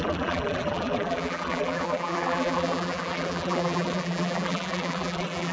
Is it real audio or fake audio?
fake